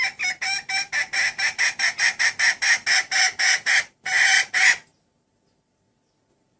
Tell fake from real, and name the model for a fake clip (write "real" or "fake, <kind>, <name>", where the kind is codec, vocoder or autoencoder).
real